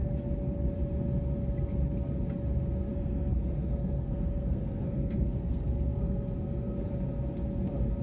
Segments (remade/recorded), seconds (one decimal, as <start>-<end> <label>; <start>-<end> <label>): 0.0-2.9 recorded; 2.9-6.9 remade; 6.9-8.0 recorded